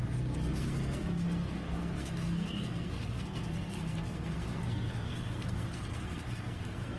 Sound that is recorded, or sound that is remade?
remade